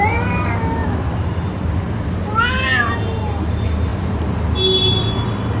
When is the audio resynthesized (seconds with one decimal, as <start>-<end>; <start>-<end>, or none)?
0.8-2.1